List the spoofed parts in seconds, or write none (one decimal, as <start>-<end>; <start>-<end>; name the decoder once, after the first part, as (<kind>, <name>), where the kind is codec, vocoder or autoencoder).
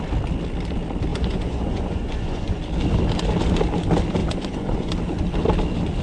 1.1-2.6 (vocoder, Vocos); 4.2-4.9